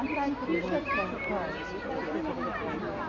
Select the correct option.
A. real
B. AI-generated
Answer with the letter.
A